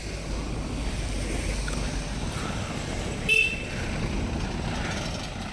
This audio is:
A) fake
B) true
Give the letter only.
B